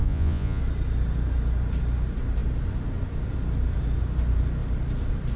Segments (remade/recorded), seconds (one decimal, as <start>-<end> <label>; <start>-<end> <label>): 0.0-0.6 remade; 0.6-5.4 recorded